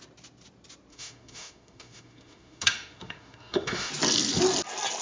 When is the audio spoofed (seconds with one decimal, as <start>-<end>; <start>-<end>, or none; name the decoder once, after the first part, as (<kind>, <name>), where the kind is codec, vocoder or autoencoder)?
0.9-3.9 (autoencoder, DAC-VAE)